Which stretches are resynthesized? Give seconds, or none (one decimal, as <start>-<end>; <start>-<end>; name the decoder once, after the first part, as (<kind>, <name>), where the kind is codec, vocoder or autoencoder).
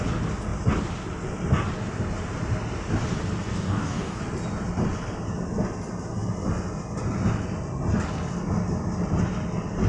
3.5-4.2 (codec, DAC)